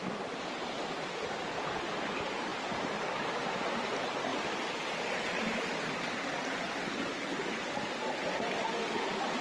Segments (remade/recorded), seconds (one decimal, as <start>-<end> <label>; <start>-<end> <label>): 0.0-9.4 recorded